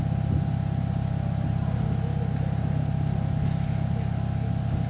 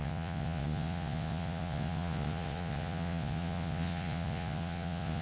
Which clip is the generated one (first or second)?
second